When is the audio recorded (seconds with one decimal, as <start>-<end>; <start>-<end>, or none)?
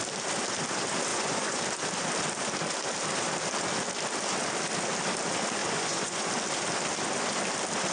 0.0-1.1; 1.6-5.6; 6.3-7.9